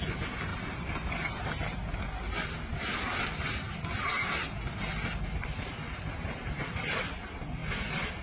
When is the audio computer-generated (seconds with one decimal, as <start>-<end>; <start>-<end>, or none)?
0.5-2.0; 5.9-7.0